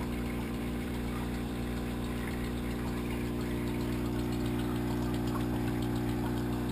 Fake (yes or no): yes